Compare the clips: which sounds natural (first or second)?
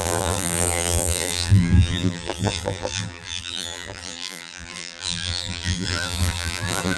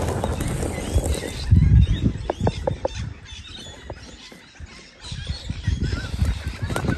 second